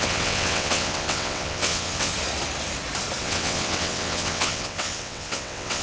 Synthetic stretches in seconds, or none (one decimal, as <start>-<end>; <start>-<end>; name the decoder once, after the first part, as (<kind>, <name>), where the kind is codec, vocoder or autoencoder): 0.0-2.1 (vocoder, WaveNeXt); 3.2-5.8